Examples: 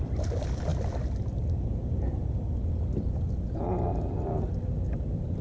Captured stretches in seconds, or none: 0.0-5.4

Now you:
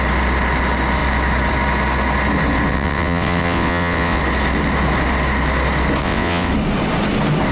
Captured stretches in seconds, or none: 0.0-2.7; 4.2-6.0; 6.5-7.5

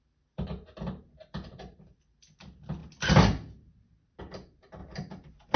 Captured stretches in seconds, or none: 0.0-5.6

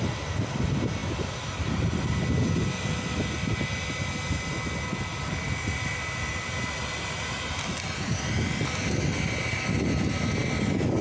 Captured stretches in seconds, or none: 0.0-11.0

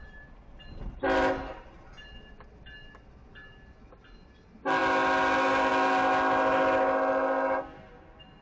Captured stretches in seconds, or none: 0.0-8.4

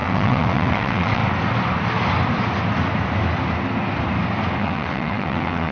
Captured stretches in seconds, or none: 1.2-4.6

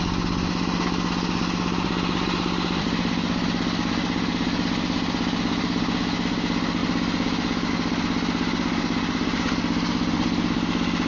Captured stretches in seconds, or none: 0.0-11.1

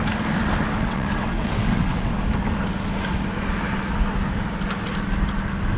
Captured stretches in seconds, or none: 0.0-0.8; 2.1-5.8